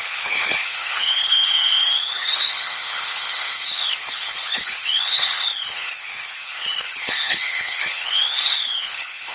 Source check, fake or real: fake